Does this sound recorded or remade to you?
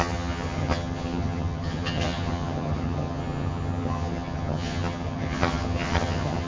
remade